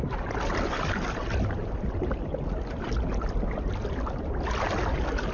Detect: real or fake real